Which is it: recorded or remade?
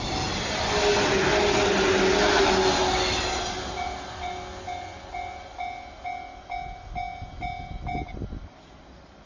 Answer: recorded